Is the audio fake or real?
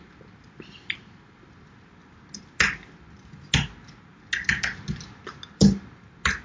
real